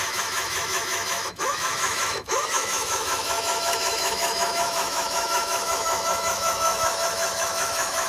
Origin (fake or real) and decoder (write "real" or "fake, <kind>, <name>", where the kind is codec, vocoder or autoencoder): fake, autoencoder, DAC-VAE